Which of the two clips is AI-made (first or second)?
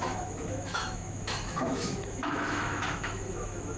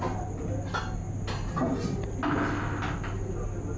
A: first